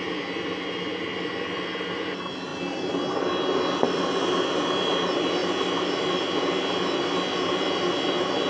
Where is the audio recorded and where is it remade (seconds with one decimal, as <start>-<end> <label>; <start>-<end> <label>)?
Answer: 0.0-8.5 recorded